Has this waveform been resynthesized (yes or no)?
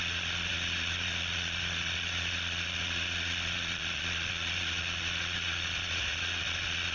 yes